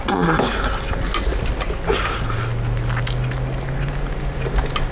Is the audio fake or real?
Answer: real